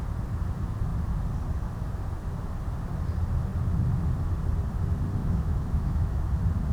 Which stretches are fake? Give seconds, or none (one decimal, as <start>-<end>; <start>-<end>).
5.2-6.2